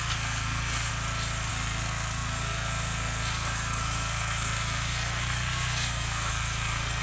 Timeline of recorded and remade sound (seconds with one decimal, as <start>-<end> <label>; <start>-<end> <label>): 0.0-0.9 remade; 0.9-1.5 recorded; 1.5-7.0 remade